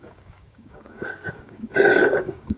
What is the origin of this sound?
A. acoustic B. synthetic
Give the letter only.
B